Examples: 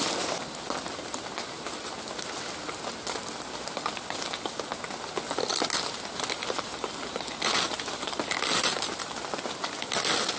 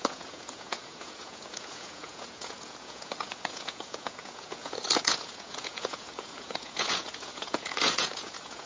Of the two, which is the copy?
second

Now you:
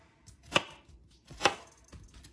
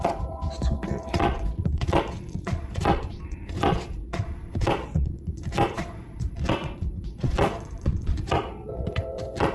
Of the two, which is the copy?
second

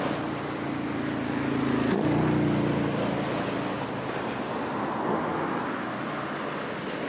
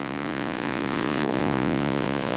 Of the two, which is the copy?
second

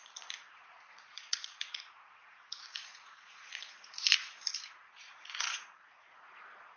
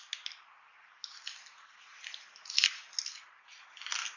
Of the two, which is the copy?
first